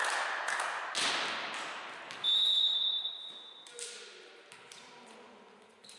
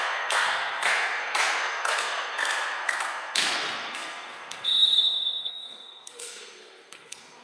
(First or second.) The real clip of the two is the first